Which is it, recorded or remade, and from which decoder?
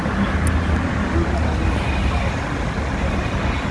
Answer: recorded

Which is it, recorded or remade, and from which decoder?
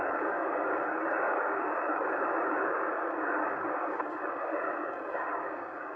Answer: remade, codec, DAC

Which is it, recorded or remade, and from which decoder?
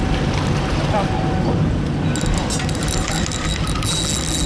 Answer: recorded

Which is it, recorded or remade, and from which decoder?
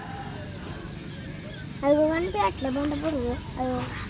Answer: recorded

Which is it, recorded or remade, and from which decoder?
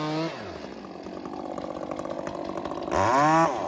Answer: recorded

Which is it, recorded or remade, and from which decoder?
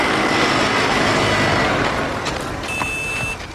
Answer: recorded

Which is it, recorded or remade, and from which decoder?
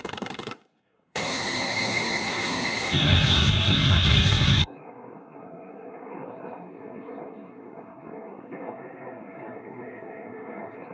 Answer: remade, codec, SNAC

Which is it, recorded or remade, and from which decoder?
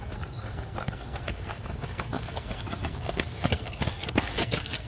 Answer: remade, codec, SNAC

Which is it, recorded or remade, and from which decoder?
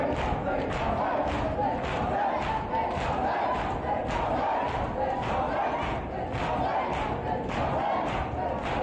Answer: recorded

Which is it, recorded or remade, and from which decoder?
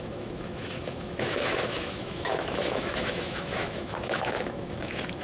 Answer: remade, autoencoder, DAC-VAE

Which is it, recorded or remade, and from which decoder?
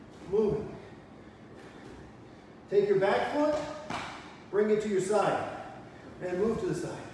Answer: recorded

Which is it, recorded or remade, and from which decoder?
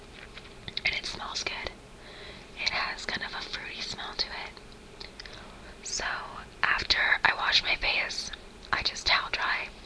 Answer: recorded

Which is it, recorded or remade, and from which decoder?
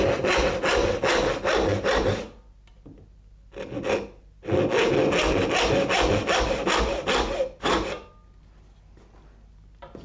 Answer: recorded